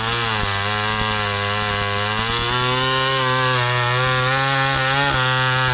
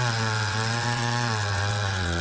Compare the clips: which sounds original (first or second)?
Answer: first